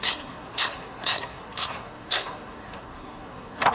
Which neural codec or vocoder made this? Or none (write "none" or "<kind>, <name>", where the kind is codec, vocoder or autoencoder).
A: codec, SNAC